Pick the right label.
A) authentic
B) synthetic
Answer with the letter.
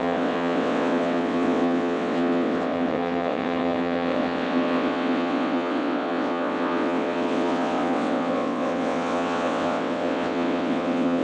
B